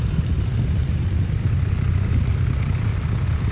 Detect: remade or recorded recorded